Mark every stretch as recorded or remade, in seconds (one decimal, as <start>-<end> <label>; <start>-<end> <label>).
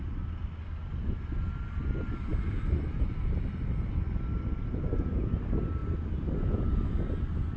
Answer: 0.0-7.6 recorded